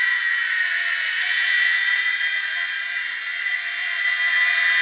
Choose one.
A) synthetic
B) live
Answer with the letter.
A